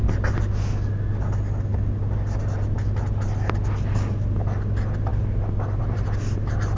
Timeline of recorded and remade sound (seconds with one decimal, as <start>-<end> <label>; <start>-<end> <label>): 0.0-6.8 recorded